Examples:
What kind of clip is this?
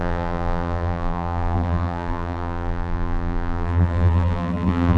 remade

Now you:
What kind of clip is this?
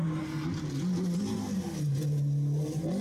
recorded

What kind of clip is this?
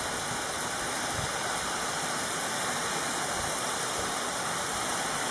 recorded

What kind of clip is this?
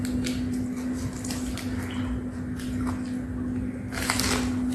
recorded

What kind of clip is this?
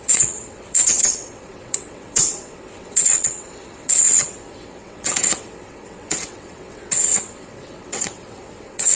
remade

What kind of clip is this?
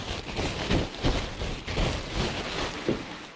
recorded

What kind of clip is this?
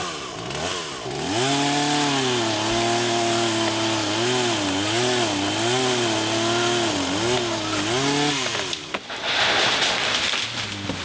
recorded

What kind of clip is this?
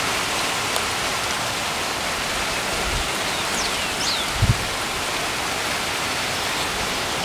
recorded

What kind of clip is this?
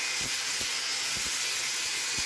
recorded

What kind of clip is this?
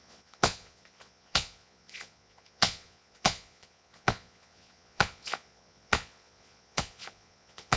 remade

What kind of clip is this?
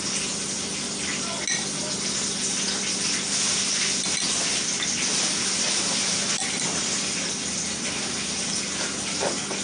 recorded